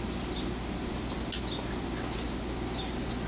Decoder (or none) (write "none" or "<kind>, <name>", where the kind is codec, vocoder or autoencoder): none